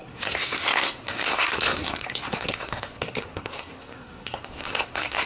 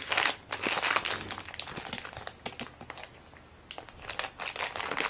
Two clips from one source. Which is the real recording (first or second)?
second